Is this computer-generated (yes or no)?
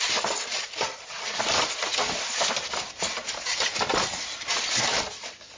yes